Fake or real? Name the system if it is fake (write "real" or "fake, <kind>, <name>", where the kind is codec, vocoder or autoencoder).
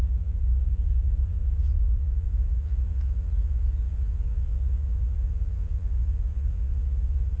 fake, vocoder, Vocos